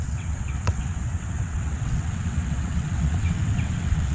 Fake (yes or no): yes